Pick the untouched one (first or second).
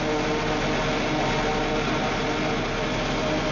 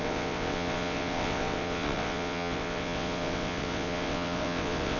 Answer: first